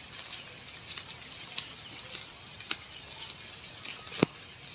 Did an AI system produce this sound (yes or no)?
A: no